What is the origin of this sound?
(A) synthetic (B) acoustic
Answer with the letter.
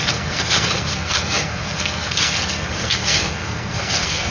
A